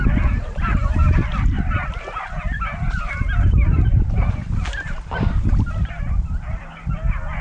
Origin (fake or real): fake